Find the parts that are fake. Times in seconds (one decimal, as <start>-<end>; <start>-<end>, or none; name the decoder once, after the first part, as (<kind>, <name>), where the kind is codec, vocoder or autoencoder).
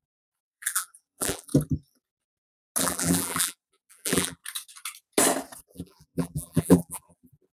0.0-1.5 (vocoder, BigVGAN v2); 2.8-4.4; 5.6-7.5